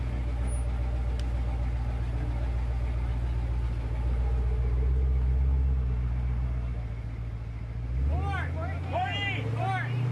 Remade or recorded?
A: recorded